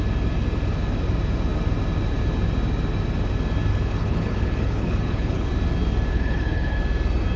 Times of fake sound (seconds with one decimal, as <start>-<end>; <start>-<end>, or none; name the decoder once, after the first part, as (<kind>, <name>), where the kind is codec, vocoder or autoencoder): 3.7-5.5 (codec, HILCodec); 6.1-6.8